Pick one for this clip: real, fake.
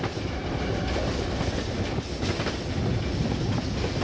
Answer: real